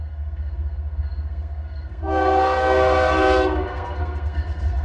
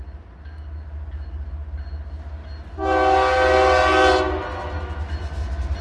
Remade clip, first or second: first